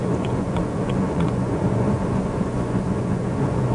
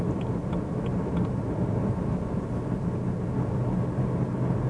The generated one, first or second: first